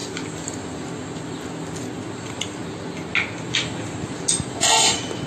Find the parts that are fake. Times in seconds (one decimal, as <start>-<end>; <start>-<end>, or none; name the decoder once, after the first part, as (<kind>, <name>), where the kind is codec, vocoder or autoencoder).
none